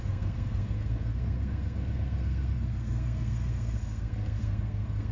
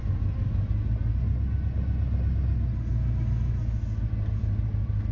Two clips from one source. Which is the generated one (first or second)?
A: first